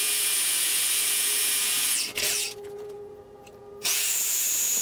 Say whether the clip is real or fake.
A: fake